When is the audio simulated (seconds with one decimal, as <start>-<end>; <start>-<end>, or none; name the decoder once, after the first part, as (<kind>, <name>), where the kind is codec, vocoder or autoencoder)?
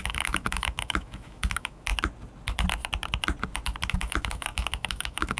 0.0-1.9 (autoencoder, DAC-VAE); 3.9-5.4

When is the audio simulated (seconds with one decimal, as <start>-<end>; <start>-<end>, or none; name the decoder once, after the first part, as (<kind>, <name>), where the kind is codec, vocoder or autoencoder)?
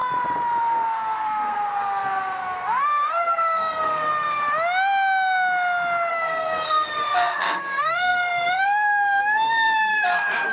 0.6-4.4 (codec, SNAC); 6.1-10.5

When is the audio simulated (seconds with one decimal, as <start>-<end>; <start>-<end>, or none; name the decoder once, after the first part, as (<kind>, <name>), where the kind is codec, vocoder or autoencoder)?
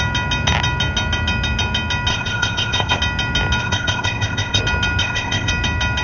2.1-3.0 (codec, ZipCodec); 3.6-4.6; 5.0-5.5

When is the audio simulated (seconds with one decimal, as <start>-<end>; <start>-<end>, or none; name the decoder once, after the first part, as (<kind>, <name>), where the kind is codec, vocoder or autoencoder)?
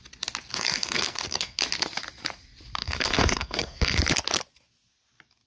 0.5-1.6 (codec, SNAC); 2.8-4.0